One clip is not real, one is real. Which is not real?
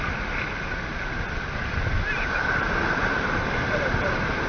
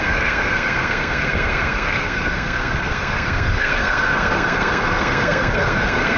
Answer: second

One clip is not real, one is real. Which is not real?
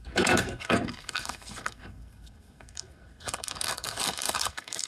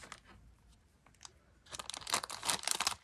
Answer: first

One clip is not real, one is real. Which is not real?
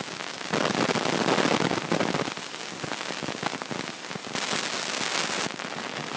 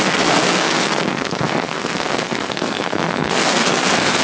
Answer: second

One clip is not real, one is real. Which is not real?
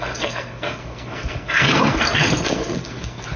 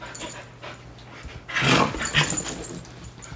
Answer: first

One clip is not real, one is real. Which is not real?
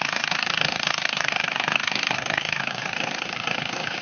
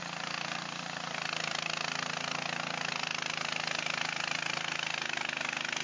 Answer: first